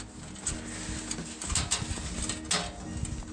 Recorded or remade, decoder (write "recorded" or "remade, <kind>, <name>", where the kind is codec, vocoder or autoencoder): recorded